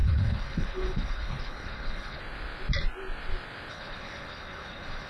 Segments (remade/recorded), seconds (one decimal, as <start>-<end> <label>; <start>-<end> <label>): 0.0-2.2 remade; 2.2-3.7 recorded; 3.7-5.1 remade